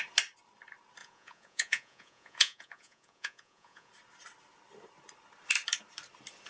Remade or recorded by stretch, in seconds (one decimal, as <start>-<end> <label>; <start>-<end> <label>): 0.0-1.0 recorded; 1.0-3.9 remade; 3.9-6.5 recorded